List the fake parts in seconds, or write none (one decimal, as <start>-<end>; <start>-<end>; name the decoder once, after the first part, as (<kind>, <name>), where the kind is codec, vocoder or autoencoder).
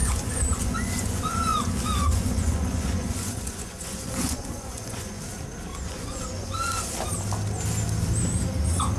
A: 0.0-5.2 (vocoder, Vocos); 5.7-6.9